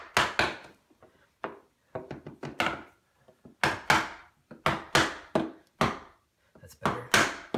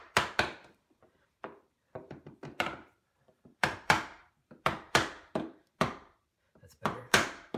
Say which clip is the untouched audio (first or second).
first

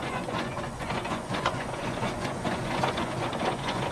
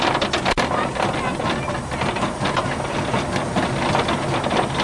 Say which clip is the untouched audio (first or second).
second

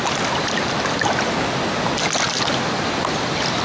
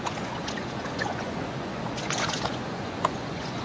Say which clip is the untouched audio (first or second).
first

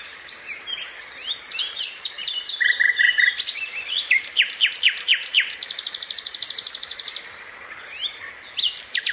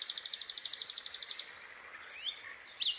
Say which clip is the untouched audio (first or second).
second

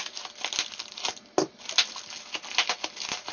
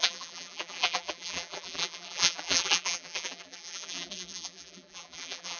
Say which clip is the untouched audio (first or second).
first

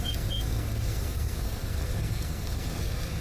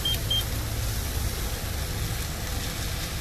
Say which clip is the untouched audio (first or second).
second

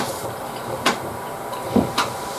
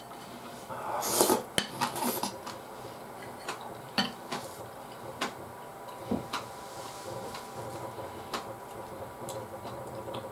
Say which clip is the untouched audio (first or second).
second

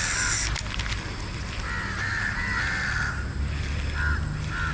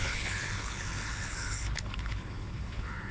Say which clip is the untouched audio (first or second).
first